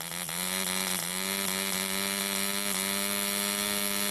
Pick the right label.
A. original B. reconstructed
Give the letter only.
A